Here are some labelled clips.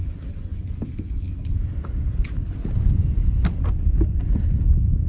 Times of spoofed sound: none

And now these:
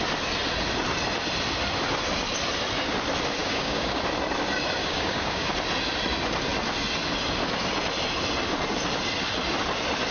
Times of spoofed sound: 3.4-4.0; 4.8-5.5

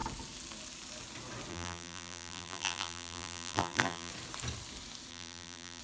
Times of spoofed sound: 1.5-4.1; 5.1-5.8

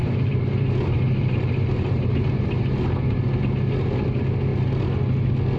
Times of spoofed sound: 0.0-2.6